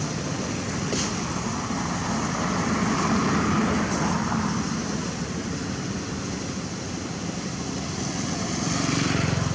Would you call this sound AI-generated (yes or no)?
no